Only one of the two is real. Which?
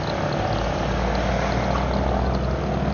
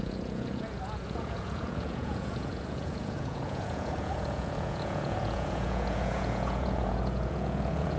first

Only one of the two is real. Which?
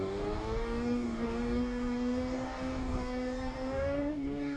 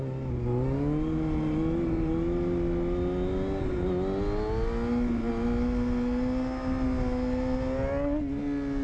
second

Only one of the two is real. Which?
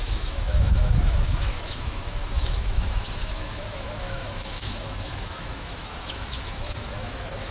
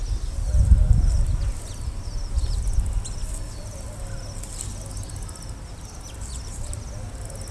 second